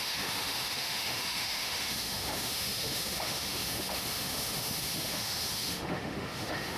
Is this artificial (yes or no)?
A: yes